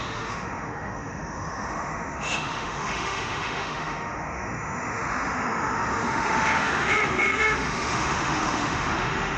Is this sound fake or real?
fake